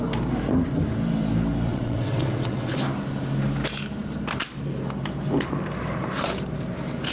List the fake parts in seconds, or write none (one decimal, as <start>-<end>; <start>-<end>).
1.7-2.8